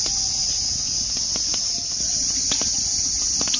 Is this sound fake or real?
real